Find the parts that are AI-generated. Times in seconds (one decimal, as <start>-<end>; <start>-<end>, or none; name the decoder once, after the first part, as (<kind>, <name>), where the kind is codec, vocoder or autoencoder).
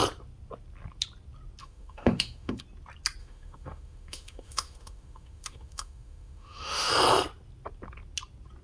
1.6-2.6 (autoencoder, DAC-VAE); 3.2-6.9